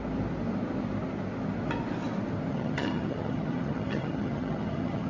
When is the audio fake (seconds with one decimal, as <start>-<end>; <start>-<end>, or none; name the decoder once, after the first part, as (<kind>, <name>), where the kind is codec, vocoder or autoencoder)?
2.5-5.1 (vocoder, HiFi-GAN)